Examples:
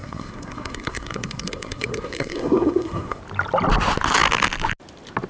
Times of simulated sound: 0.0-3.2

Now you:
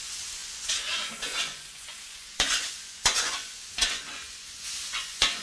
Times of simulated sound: 0.0-5.4

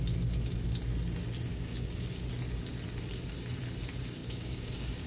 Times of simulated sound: 1.5-2.3; 4.2-5.1

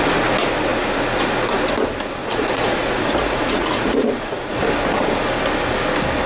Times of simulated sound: 2.2-4.6

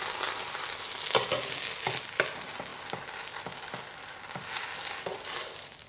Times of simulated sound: none

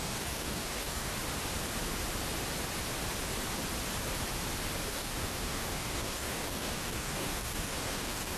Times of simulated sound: 0.0-1.1; 4.9-8.4